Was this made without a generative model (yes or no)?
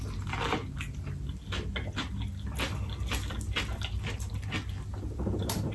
yes